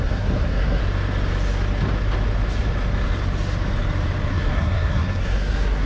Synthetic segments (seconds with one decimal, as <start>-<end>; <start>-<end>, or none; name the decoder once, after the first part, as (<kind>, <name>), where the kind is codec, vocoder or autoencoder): 0.0-0.8 (codec, SNAC); 4.3-5.9